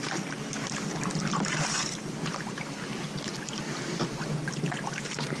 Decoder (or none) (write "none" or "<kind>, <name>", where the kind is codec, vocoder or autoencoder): none